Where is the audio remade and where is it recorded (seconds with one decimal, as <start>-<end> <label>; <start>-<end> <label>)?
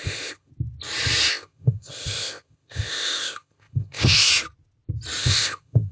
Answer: 0.0-0.5 remade; 0.5-1.3 recorded; 1.3-4.3 remade; 4.3-5.2 recorded; 5.2-5.9 remade